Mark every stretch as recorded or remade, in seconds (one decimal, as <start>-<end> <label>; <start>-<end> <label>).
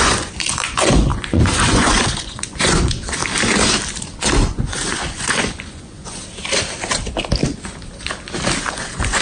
0.0-3.2 remade; 3.2-4.2 recorded; 4.2-6.2 remade; 6.2-8.6 recorded; 8.6-9.2 remade